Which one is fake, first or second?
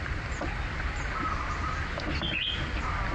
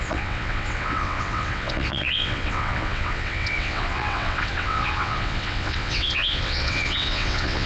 second